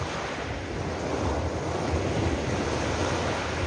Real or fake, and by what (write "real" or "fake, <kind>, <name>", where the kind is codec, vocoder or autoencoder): real